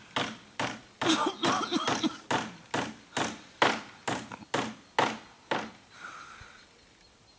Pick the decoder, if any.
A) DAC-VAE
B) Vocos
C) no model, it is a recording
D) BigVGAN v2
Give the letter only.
C